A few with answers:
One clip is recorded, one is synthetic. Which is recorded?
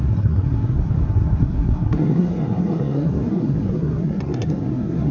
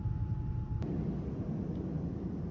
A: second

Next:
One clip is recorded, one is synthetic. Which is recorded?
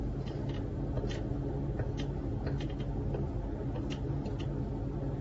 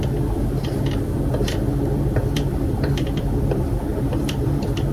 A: first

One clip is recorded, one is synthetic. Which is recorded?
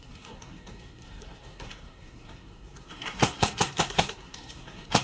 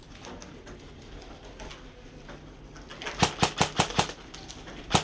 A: second